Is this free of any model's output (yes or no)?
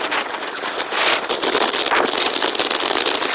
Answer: yes